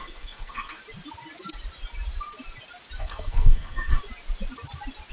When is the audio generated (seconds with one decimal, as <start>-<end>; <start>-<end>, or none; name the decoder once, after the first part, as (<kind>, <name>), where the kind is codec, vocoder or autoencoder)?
0.0-0.8 (codec, SNAC); 3.0-4.0